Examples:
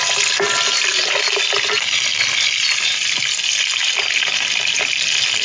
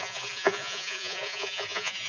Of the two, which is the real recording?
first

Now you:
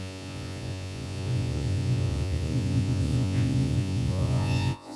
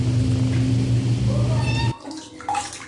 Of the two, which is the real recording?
second